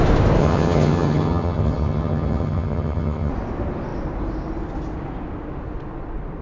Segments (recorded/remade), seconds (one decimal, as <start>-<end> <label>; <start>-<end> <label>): 0.0-0.4 recorded; 0.4-3.3 remade; 3.3-6.4 recorded